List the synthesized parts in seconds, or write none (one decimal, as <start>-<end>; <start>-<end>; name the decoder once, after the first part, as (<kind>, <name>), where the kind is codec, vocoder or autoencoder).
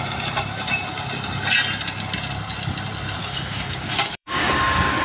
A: 3.2-5.0 (codec, DAC)